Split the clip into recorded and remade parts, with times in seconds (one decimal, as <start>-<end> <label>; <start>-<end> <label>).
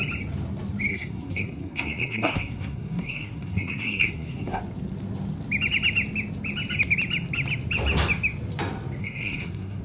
0.0-0.9 recorded; 0.9-4.6 remade; 4.6-9.0 recorded; 9.0-9.8 remade